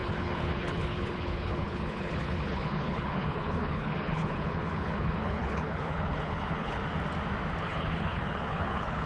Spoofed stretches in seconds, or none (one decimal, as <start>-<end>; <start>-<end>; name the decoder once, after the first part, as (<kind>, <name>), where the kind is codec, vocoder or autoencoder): 0.0-6.8 (codec, HILCodec); 7.6-9.1